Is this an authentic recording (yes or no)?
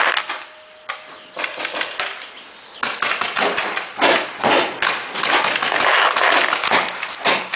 yes